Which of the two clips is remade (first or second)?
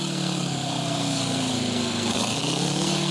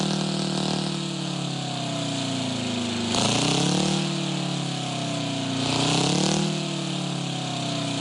first